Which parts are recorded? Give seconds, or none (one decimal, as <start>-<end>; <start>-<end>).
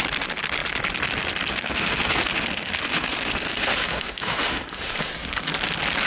0.0-1.5; 5.1-6.1